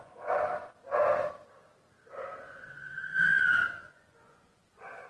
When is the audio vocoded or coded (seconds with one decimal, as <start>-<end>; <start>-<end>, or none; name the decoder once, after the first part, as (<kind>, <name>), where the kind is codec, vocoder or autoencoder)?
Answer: 0.0-0.5 (vocoder, Vocos); 2.4-5.1